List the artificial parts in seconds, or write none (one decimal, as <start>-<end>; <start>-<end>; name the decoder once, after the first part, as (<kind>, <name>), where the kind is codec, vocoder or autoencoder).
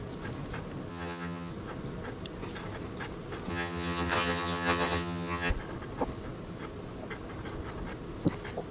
0.9-1.5 (vocoder, HiFi-GAN); 3.5-5.5